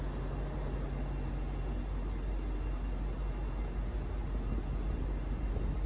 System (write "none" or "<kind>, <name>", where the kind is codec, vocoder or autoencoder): none